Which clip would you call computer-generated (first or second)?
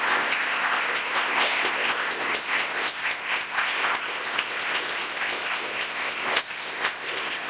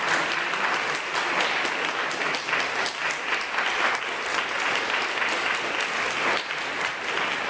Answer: first